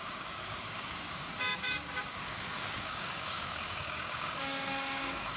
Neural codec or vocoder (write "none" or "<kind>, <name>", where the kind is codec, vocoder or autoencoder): codec, DAC